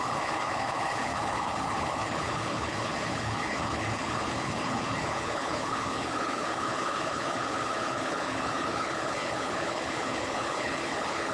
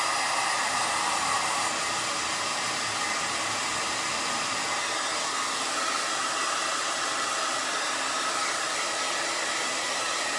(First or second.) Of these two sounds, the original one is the second